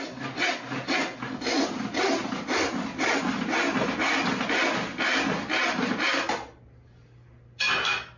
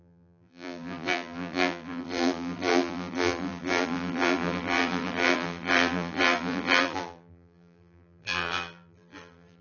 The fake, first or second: second